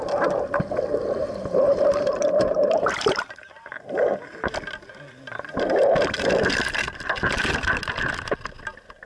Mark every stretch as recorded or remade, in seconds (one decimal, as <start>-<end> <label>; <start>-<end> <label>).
0.0-1.2 recorded; 1.2-3.7 remade; 3.7-9.1 recorded